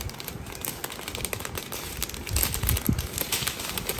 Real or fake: real